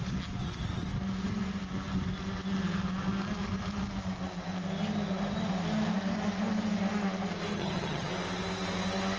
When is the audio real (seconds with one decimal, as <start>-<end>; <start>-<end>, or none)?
0.0-7.5; 8.1-9.2